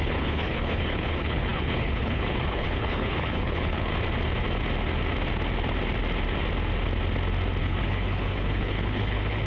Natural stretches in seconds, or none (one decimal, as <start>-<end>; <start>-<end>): 3.9-7.6